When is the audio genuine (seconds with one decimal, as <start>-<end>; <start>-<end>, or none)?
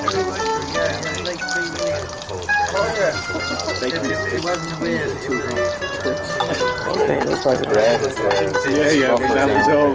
0.0-6.8; 7.7-9.9